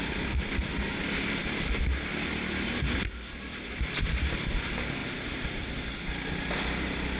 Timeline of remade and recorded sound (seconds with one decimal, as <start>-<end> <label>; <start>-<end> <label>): 0.0-7.2 recorded